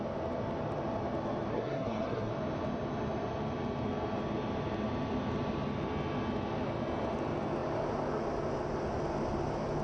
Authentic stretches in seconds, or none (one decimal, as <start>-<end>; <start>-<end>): 0.0-1.5; 2.3-9.8